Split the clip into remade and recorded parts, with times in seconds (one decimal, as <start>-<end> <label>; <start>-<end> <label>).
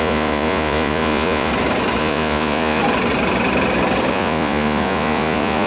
0.0-1.5 remade; 1.5-2.0 recorded; 2.0-2.8 remade; 2.8-4.1 recorded; 4.1-5.7 remade